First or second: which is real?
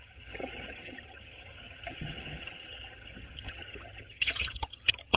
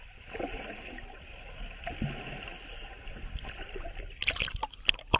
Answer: second